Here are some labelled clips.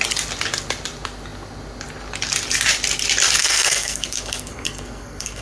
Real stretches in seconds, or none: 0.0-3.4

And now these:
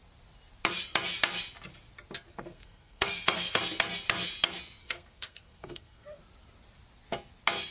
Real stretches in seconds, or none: 0.0-2.3; 3.6-4.8; 6.2-7.7